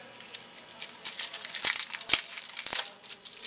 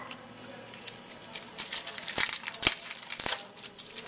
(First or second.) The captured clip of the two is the first